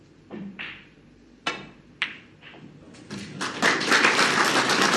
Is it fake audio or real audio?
fake